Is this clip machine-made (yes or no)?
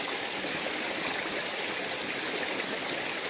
no